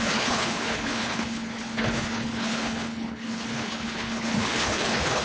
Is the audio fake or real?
fake